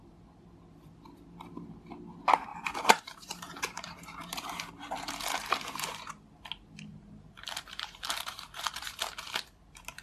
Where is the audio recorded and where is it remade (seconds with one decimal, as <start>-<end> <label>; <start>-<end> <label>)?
0.0-2.5 recorded; 2.5-6.1 remade; 6.1-6.9 recorded; 6.9-8.7 remade; 8.7-10.0 recorded